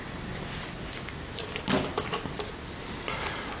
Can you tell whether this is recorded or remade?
recorded